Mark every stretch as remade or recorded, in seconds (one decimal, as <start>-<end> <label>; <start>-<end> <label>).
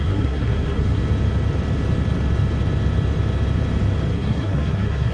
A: 0.0-1.0 remade; 1.0-4.1 recorded; 4.1-5.1 remade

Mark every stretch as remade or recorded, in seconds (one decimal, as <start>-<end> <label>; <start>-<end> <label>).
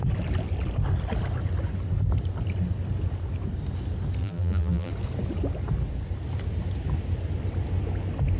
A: 0.0-4.2 recorded; 4.2-4.9 remade; 4.9-8.4 recorded